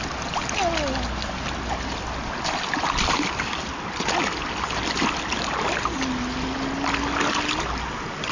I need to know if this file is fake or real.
real